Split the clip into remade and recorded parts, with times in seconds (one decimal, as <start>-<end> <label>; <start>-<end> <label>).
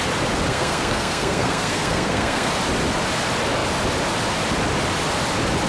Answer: 0.0-0.5 recorded; 0.5-2.5 remade; 2.5-5.7 recorded